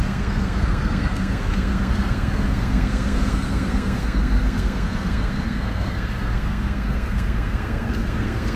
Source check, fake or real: fake